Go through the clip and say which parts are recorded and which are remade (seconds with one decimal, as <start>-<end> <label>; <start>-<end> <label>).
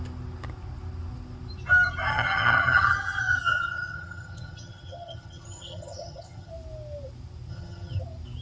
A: 0.0-2.1 recorded; 2.1-6.5 remade; 6.5-7.5 recorded; 7.5-8.0 remade; 8.0-8.4 recorded